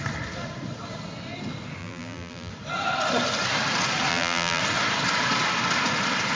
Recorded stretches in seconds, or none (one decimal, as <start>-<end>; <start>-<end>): 0.0-1.8; 2.5-4.1; 4.6-6.4